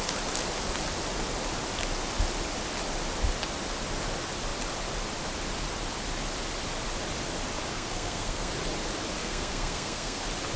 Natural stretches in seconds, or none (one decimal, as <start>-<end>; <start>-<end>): 0.0-7.7; 8.5-9.2; 10.2-10.6